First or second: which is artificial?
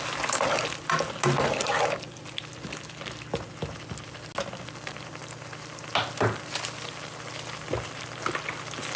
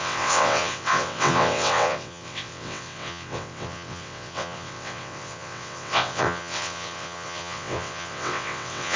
second